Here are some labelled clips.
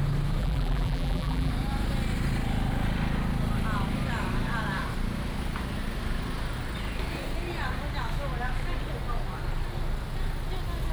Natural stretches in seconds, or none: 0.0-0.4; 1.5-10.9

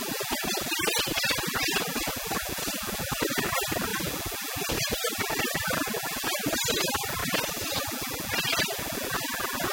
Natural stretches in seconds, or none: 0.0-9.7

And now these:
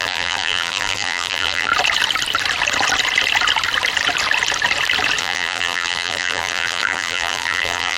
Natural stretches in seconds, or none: 1.7-5.2